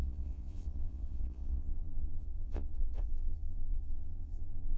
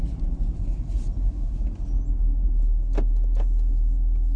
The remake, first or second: first